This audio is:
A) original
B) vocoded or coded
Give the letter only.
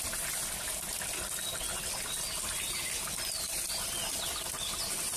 A